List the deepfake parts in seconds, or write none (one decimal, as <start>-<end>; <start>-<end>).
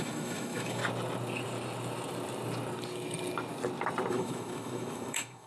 0.0-0.8; 4.1-5.5